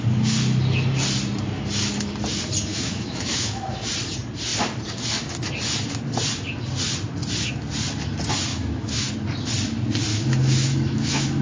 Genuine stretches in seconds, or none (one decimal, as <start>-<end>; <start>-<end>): 0.0-2.7; 3.7-8.5; 9.1-10.1

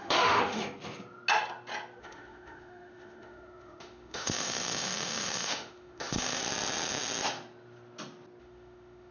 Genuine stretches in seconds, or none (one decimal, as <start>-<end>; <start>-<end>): 0.6-2.0; 6.4-8.4

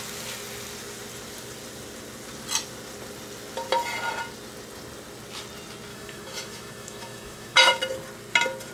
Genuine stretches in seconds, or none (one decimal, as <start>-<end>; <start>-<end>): 0.0-5.9; 7.8-8.7